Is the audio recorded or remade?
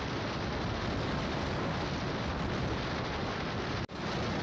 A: recorded